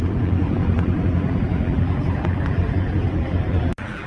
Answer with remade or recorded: remade